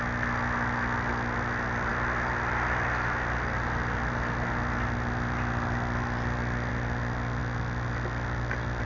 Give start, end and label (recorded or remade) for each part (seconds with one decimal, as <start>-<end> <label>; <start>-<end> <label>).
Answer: 0.0-8.8 recorded